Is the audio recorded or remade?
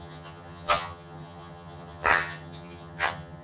remade